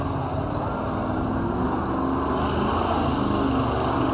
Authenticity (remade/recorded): recorded